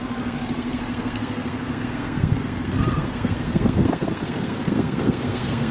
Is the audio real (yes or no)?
no